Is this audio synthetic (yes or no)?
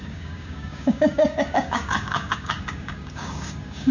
yes